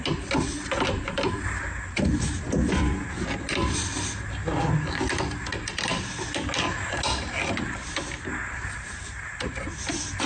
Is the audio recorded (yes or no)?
yes